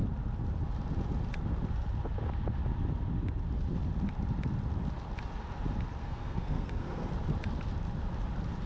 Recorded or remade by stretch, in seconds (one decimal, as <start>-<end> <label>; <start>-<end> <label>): 0.0-6.0 recorded; 6.0-7.1 remade; 7.1-8.7 recorded